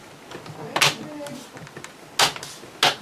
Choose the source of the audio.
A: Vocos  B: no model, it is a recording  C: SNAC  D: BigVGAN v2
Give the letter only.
B